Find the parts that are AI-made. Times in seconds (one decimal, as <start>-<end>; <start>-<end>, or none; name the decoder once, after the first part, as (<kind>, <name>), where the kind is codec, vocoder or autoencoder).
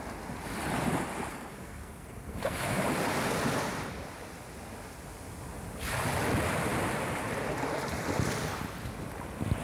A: 1.3-2.8 (codec, SNAC)